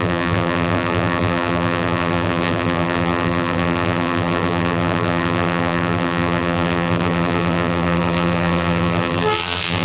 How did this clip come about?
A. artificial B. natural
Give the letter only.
A